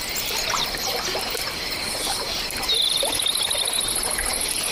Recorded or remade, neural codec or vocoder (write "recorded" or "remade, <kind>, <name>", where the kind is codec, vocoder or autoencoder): recorded